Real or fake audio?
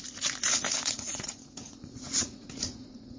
fake